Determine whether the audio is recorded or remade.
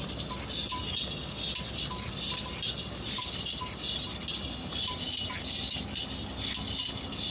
recorded